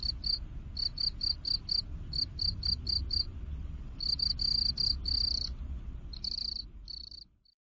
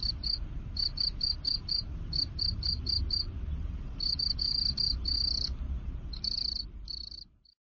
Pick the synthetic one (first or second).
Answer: second